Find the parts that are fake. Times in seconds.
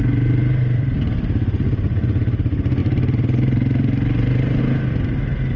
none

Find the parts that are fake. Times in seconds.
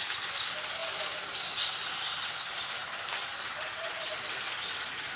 none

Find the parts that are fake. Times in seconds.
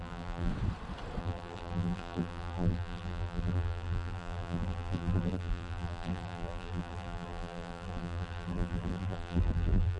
0.0-0.5; 1.2-10.0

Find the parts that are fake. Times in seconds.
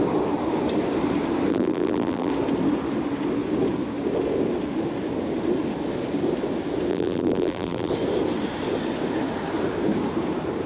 1.5-2.3; 6.9-7.9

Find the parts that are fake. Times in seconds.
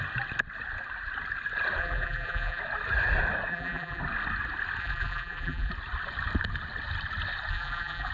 1.8-2.6; 3.5-4.0; 4.8-5.7; 7.5-8.1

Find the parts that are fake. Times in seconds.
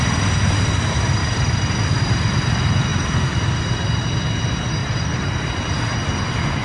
4.8-5.5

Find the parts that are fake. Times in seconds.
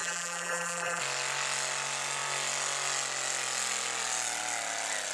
0.0-1.0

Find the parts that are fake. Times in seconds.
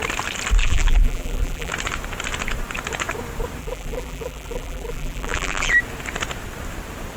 0.6-1.7; 3.6-5.8